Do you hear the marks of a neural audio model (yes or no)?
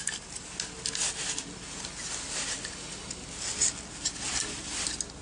no